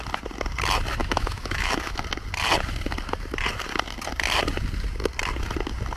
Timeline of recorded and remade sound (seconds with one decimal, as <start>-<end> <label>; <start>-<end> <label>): 0.0-1.0 recorded; 1.0-2.0 remade; 2.0-6.0 recorded